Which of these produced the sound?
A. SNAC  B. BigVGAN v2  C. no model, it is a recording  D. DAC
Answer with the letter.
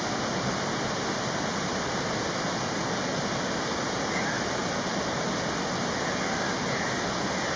C